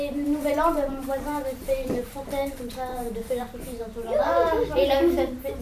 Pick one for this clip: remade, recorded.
remade